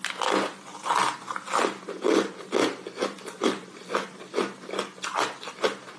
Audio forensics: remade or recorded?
recorded